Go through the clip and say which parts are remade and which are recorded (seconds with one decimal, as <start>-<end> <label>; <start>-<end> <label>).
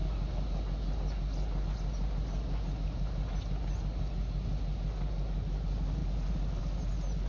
0.0-7.3 recorded